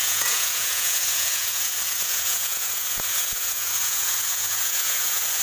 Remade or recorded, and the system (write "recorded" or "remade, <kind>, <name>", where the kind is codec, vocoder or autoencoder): remade, vocoder, Vocos